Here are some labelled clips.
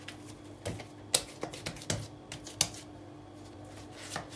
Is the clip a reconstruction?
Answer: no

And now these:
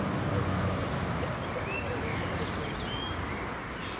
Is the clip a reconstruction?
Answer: no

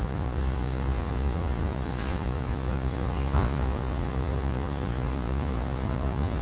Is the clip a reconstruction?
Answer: yes